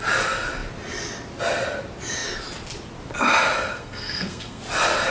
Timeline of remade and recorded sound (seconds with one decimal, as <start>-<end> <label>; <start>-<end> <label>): 0.0-3.7 recorded; 3.7-4.6 remade; 4.6-5.1 recorded